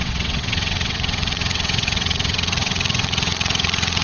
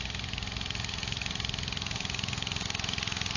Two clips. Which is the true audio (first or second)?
second